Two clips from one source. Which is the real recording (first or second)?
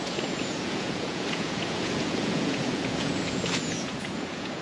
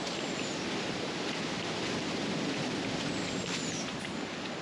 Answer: second